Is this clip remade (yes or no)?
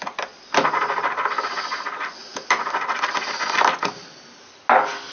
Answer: no